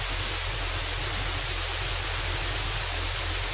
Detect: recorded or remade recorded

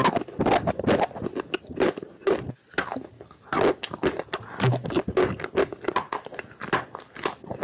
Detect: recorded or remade recorded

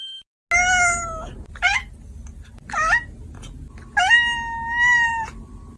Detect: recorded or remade recorded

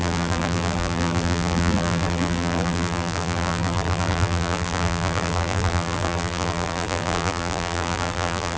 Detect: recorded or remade remade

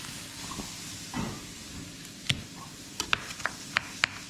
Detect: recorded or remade recorded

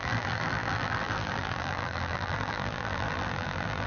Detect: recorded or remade remade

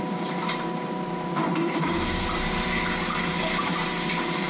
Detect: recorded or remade remade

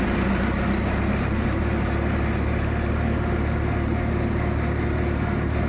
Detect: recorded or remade recorded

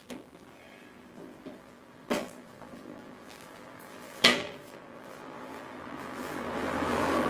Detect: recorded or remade remade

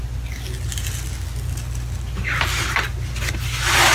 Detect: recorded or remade recorded